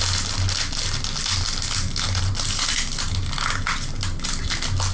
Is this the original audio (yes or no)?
yes